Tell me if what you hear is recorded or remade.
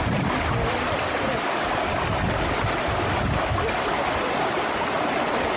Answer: recorded